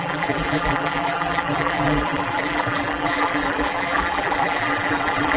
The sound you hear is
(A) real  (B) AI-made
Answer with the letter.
B